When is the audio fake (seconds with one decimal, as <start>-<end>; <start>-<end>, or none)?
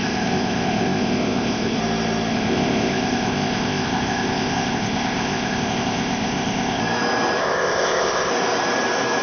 0.0-1.8; 2.3-6.8; 7.4-8.3